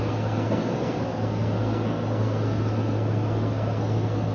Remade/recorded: remade